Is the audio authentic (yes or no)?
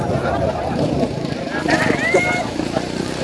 no